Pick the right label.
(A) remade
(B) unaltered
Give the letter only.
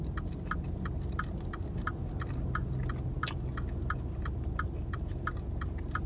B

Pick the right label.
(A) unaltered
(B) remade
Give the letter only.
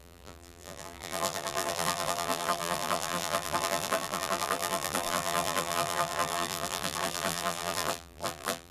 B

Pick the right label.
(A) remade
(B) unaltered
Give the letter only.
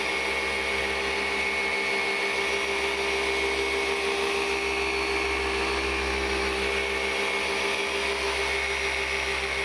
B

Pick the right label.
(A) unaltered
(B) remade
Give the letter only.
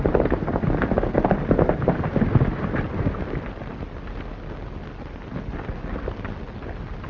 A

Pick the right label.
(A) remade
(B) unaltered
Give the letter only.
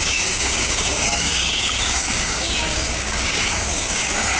A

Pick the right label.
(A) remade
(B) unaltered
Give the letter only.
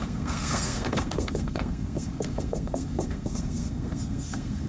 A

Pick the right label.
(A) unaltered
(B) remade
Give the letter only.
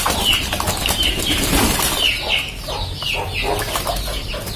A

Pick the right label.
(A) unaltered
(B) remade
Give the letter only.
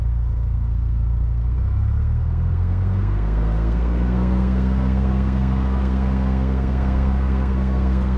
B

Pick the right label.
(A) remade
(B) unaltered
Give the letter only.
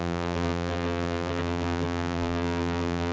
A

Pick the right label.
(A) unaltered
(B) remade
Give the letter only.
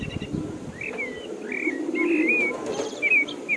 A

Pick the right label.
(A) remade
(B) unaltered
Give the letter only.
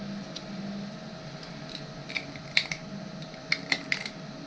B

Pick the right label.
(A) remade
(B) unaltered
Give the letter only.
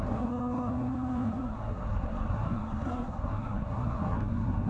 A